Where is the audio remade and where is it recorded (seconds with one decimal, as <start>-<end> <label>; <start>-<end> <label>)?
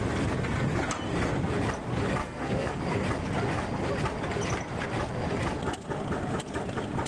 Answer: 0.0-2.2 recorded; 2.2-2.8 remade; 2.8-7.1 recorded